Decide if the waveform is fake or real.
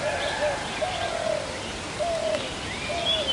real